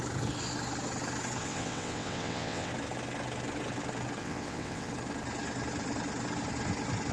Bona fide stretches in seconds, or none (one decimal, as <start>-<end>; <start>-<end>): 0.0-1.4; 2.7-4.2; 4.9-7.1